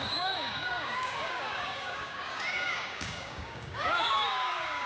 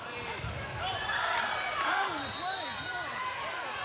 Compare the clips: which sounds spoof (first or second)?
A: first